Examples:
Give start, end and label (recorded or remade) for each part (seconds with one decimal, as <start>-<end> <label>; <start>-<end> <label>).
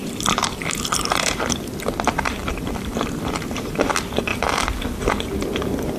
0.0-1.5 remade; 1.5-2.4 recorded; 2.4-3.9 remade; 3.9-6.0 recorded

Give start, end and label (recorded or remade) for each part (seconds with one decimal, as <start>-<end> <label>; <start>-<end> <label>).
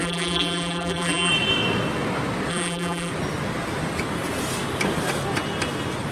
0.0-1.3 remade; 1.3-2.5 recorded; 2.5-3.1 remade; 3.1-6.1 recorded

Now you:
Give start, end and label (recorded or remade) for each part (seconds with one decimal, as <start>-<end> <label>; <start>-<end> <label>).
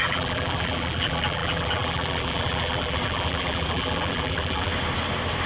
0.0-4.7 remade; 4.7-5.5 recorded